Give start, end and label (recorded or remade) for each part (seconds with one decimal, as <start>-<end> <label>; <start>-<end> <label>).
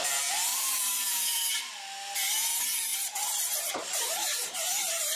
0.0-0.5 recorded; 0.5-1.5 remade; 1.5-2.9 recorded; 2.9-5.2 remade